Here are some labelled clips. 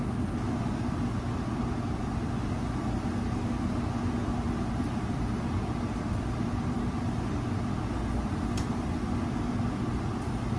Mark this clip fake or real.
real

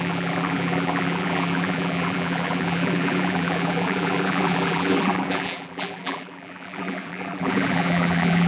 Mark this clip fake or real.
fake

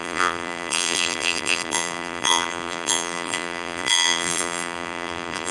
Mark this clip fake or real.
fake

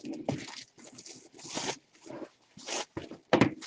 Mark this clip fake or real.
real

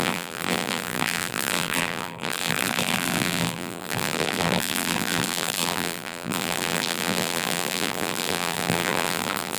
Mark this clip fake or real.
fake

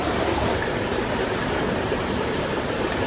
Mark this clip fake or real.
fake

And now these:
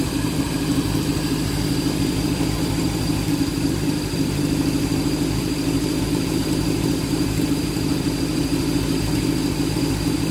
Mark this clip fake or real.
fake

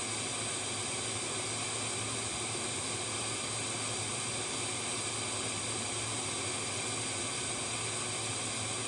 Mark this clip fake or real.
real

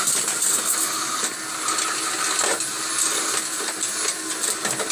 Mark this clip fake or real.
real